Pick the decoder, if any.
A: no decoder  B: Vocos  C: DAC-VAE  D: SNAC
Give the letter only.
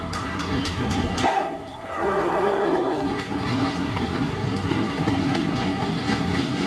D